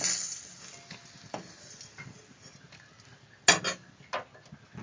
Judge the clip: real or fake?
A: real